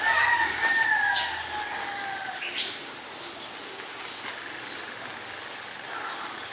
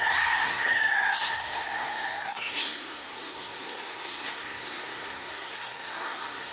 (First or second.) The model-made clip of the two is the second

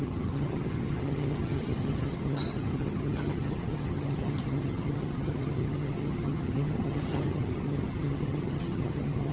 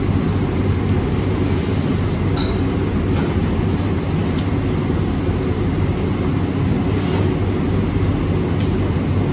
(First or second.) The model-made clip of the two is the first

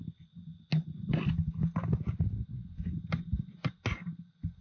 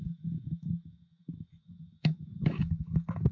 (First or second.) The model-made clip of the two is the second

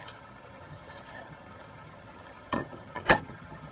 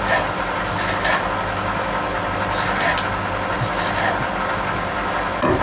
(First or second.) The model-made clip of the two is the first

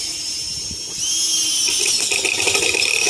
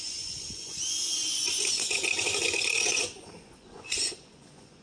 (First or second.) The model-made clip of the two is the second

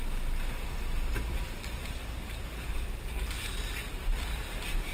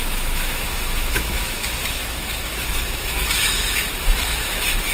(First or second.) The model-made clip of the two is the second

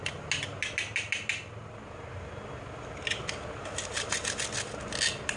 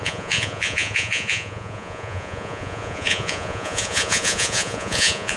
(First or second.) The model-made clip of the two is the second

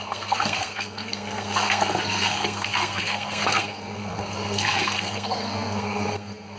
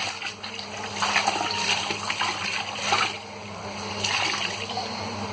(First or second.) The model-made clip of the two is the first